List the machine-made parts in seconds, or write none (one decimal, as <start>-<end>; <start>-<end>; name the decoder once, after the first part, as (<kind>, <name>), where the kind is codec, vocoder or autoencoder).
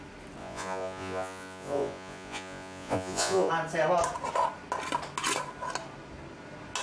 0.4-3.5 (vocoder, Vocos)